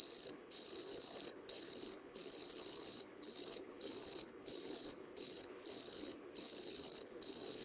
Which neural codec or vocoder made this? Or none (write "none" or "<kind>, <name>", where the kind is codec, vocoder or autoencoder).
codec, HILCodec